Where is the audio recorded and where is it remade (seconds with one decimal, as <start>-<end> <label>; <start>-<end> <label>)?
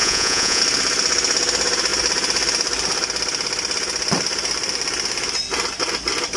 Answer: 0.0-0.6 remade; 0.6-6.4 recorded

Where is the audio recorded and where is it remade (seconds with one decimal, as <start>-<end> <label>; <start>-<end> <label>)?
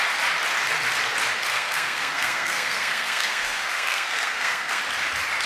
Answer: 0.0-1.5 recorded; 1.5-4.8 remade; 4.8-5.5 recorded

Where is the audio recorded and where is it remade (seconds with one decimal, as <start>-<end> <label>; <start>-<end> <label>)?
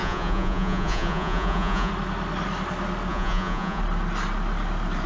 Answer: 0.0-1.9 remade; 1.9-3.1 recorded; 3.1-3.8 remade; 3.8-5.1 recorded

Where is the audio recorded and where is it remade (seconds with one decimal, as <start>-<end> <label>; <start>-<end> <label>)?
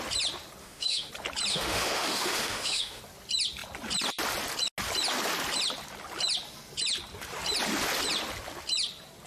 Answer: 0.0-0.6 recorded; 0.6-1.1 remade; 1.1-1.5 recorded; 1.5-3.0 remade; 3.0-9.3 recorded